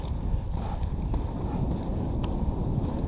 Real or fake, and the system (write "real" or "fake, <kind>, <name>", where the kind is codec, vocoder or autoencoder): real